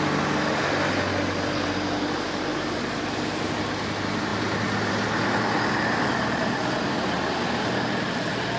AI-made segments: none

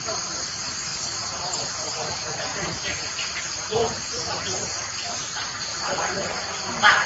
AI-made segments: 2.5-4.9 (vocoder, BigVGAN v2); 5.7-6.4